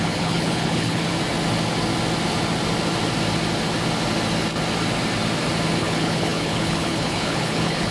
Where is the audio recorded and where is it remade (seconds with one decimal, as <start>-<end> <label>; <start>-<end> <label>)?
0.0-1.1 remade; 1.1-5.8 recorded; 5.8-7.9 remade